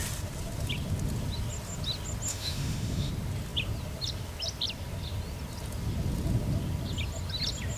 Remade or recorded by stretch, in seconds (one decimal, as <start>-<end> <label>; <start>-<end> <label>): 0.0-2.3 recorded; 2.3-3.1 remade; 3.1-7.8 recorded